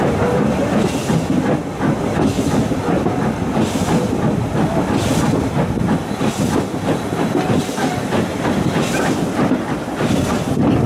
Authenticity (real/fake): real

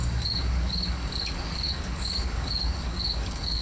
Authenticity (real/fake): fake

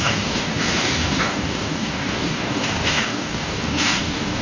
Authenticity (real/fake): fake